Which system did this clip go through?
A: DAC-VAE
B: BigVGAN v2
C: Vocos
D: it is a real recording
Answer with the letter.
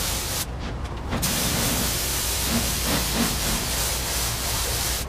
B